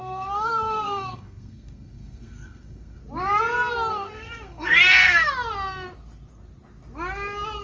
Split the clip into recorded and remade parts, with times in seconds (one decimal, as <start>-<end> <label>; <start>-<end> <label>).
0.0-3.0 remade; 3.0-3.9 recorded; 3.9-5.3 remade; 5.3-7.6 recorded